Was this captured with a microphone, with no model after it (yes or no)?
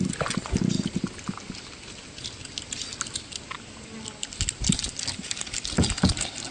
yes